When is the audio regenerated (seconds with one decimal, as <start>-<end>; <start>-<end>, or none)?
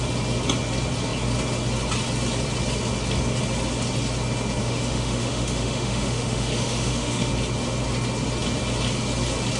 4.6-7.3